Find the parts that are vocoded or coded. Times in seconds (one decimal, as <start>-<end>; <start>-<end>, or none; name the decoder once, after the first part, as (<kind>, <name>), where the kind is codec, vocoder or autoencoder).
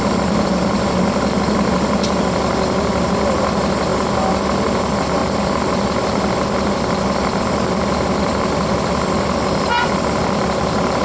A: none